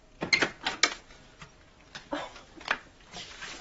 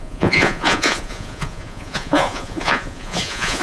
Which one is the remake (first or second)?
second